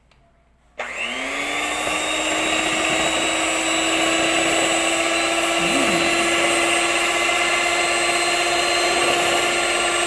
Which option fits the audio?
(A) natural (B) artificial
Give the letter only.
A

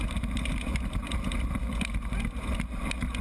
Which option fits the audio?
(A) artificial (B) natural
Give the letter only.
B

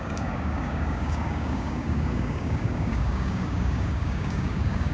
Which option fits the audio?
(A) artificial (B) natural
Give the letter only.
A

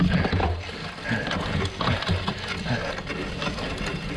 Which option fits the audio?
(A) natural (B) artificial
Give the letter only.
A